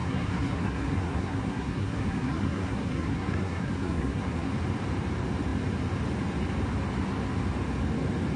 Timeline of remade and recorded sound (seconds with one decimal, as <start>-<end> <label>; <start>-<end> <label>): 0.0-4.5 remade; 4.5-8.4 recorded